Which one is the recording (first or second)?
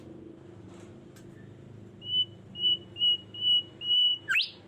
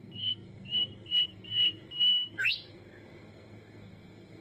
first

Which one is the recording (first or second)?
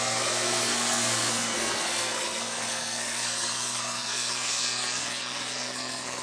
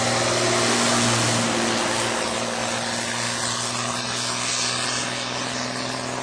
second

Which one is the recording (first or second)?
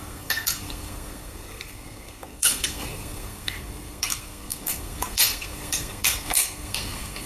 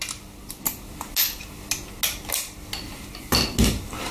second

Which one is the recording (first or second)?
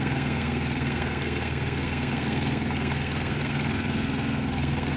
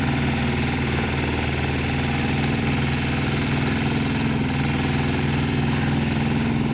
second